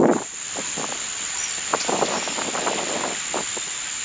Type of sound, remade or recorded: remade